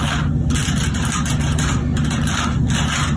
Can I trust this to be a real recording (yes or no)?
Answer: yes